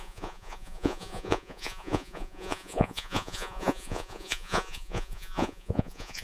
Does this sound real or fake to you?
fake